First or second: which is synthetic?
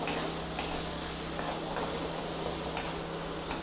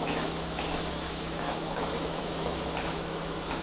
second